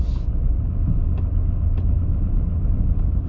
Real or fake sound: real